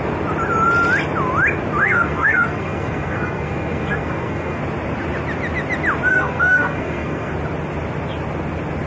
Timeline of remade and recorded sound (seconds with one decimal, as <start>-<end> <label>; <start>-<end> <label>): 0.0-1.8 recorded; 1.8-4.6 remade; 4.6-6.1 recorded; 6.1-7.3 remade; 7.3-8.9 recorded